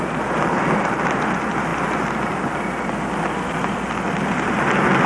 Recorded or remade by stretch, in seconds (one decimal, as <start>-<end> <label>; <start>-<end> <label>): 0.0-5.1 recorded